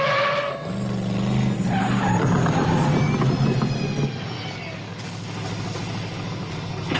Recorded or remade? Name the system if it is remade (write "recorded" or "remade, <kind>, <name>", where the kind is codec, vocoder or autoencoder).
recorded